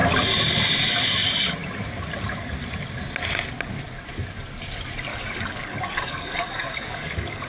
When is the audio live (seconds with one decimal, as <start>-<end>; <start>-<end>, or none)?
0.0-5.1